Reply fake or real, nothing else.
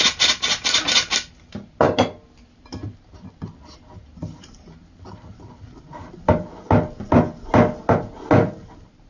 real